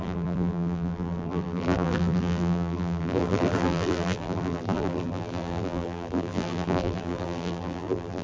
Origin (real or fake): fake